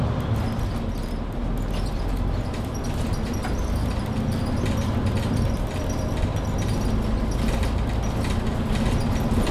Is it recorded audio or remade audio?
recorded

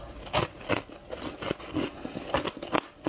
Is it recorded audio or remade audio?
recorded